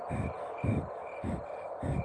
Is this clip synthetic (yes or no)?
no